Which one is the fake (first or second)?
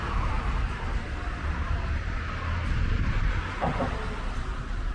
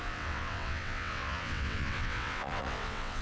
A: second